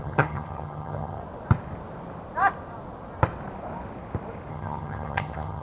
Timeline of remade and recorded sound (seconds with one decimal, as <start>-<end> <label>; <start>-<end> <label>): 0.0-1.2 remade; 1.2-4.5 recorded; 4.5-5.6 remade